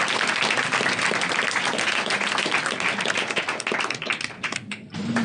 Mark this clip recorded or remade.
recorded